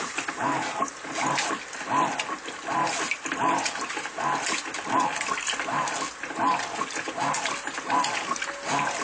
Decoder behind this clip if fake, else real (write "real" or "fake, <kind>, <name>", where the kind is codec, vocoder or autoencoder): real